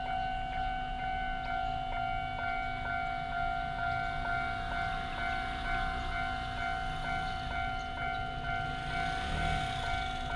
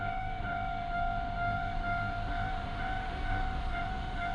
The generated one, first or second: second